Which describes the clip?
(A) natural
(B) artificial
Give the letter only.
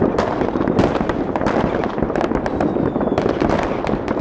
A